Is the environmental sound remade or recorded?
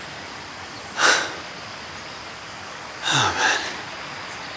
recorded